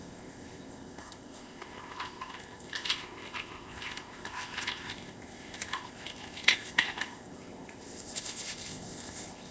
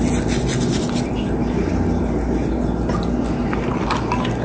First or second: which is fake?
first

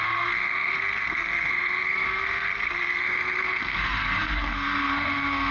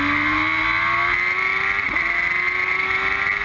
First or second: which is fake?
first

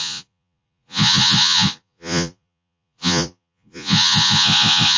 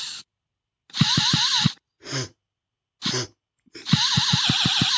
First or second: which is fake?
first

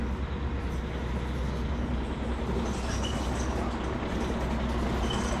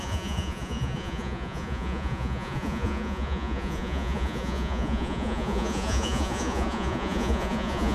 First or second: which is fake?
second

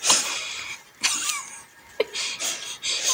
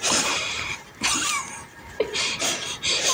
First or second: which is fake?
second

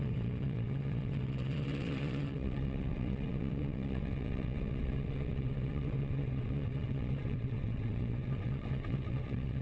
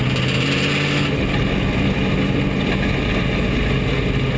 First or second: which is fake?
first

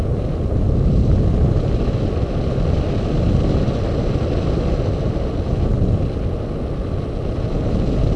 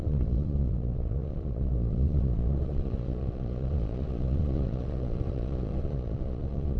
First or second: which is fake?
second